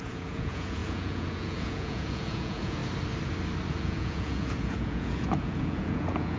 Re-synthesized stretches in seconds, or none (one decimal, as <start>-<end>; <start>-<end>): 0.0-2.8; 3.7-6.4